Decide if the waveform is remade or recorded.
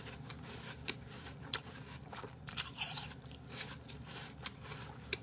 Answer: remade